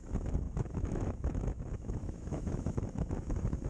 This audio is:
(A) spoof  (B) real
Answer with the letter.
A